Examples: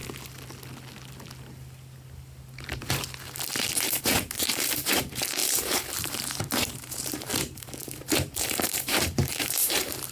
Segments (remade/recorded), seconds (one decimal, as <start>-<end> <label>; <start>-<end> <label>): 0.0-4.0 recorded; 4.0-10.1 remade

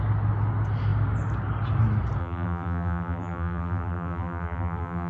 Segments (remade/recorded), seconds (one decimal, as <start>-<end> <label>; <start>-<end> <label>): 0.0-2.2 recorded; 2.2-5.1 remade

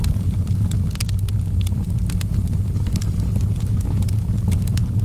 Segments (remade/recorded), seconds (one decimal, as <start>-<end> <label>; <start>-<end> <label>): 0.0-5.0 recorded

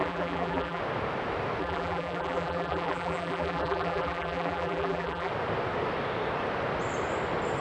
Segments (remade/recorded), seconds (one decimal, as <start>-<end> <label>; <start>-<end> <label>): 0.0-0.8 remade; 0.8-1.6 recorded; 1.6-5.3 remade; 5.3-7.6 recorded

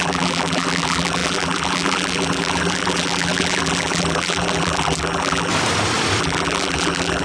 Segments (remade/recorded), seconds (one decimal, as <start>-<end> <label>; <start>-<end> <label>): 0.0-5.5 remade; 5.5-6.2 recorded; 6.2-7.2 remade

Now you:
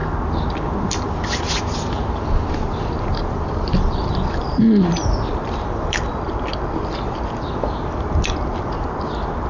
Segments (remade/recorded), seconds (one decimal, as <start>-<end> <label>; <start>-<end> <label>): 0.0-2.5 recorded; 2.5-9.5 remade

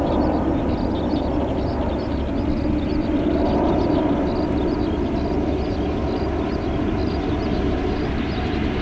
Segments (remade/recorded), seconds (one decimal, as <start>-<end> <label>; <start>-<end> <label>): 0.0-7.5 recorded; 7.5-8.1 remade; 8.1-8.8 recorded